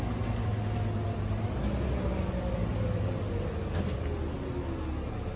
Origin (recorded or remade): recorded